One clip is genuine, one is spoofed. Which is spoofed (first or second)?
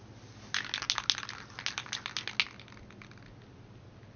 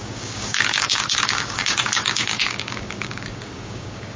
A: second